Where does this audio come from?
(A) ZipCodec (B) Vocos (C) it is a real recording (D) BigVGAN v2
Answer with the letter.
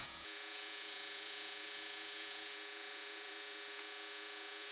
B